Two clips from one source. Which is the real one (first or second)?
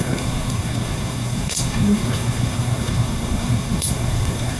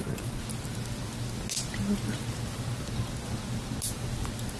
second